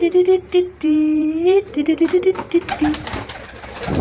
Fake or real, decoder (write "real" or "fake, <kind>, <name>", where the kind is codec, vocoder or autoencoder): fake, vocoder, BigVGAN v2